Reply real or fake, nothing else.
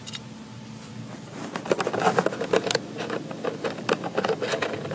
real